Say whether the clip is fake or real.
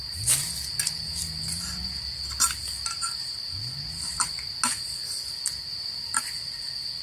real